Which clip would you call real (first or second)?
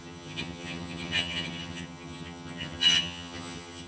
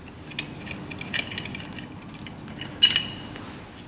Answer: second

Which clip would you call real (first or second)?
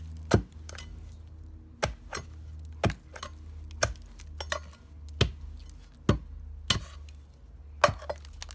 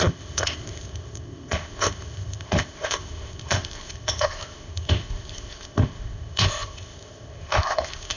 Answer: first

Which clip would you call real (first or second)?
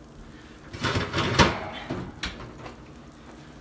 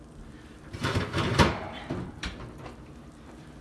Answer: first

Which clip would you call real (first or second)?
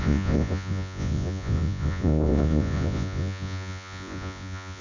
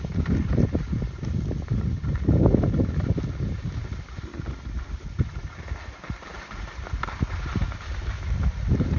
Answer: second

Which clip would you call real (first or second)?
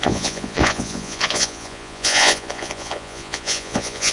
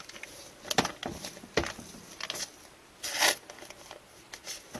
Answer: second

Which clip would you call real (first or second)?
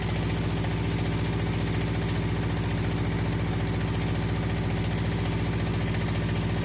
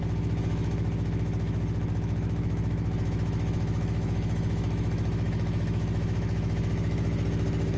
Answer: first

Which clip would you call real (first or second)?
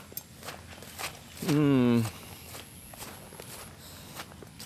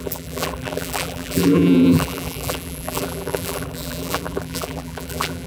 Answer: first